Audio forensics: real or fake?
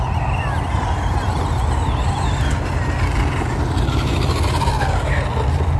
real